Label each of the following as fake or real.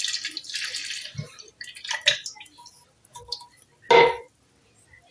real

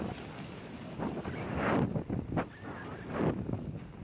real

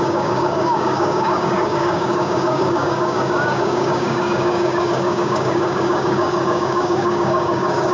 fake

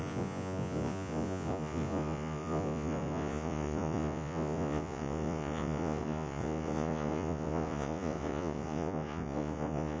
fake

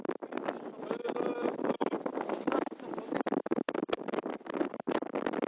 real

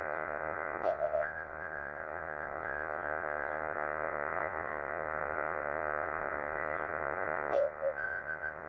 fake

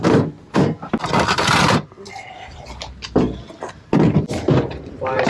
real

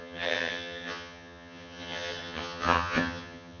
fake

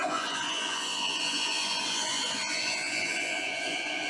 fake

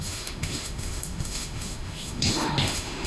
fake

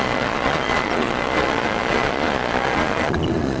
fake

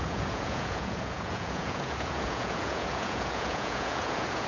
fake